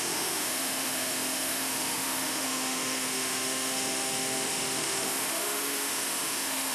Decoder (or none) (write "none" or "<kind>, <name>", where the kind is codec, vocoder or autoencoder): autoencoder, DAC-VAE